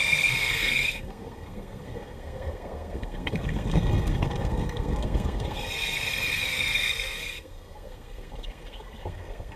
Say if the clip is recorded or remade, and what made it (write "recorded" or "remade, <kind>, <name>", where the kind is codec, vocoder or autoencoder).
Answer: remade, codec, SNAC